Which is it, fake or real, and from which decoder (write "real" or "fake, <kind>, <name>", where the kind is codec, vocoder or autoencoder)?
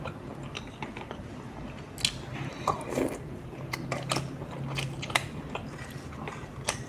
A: real